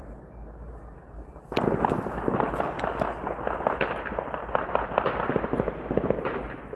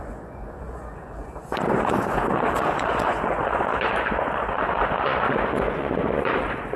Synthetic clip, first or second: second